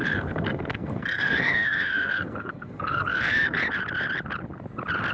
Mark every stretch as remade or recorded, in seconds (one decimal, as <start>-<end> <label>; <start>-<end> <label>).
0.0-3.6 remade; 3.6-5.1 recorded